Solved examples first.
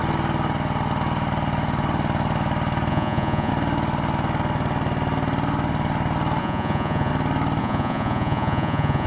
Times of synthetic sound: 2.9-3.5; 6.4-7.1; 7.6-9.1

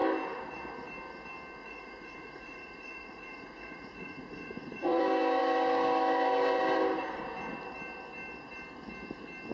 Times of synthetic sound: 1.6-5.0

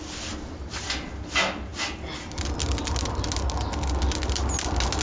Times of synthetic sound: none

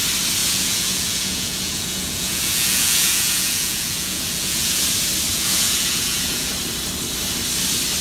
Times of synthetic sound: 0.4-4.8; 5.3-6.5